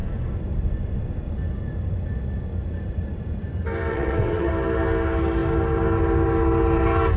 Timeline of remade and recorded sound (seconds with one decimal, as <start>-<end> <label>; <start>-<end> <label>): 0.0-3.9 recorded; 3.9-4.5 remade; 4.5-7.2 recorded